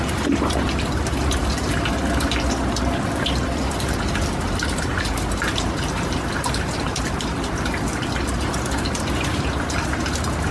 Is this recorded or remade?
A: recorded